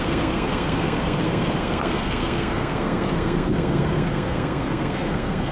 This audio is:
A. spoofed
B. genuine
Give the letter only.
A